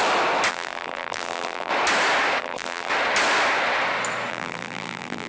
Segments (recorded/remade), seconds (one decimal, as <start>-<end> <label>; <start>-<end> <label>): 0.0-0.5 recorded; 0.5-1.7 remade; 1.7-2.4 recorded; 2.4-2.9 remade; 2.9-4.3 recorded; 4.3-5.3 remade